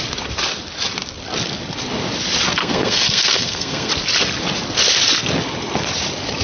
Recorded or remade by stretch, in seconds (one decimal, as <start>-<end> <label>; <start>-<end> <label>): 0.0-2.6 recorded; 2.6-3.9 remade; 3.9-6.4 recorded